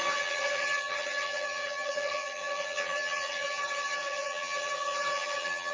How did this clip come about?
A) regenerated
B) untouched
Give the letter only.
A